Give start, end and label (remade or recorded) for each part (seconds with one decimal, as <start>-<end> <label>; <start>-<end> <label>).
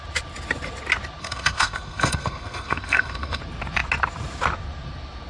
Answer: 0.0-1.2 recorded; 1.2-3.4 remade; 3.4-5.3 recorded